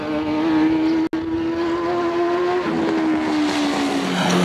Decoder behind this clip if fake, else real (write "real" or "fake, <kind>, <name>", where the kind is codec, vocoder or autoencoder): real